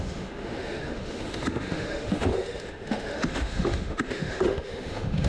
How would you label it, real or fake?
fake